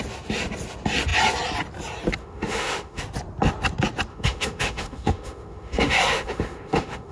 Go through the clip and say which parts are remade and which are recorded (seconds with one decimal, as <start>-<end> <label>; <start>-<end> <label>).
0.0-2.2 recorded; 2.2-3.0 remade; 3.0-4.1 recorded; 4.1-7.1 remade